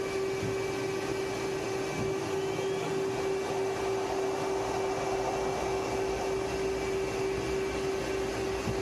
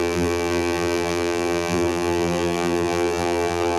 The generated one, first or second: second